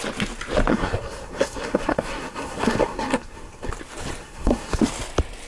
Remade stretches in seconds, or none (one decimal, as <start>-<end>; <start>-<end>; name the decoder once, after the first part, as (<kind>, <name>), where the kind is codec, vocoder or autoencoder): 0.7-3.7 (codec, SNAC); 4.2-4.8